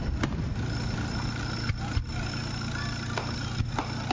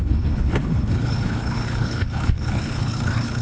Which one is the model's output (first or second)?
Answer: second